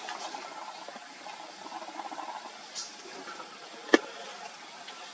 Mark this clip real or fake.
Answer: real